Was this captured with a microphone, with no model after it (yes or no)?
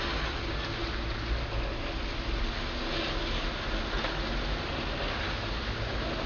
yes